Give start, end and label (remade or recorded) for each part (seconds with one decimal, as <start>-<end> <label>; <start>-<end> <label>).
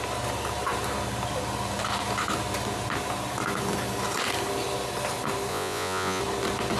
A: 0.0-5.5 recorded; 5.5-6.2 remade; 6.2-6.8 recorded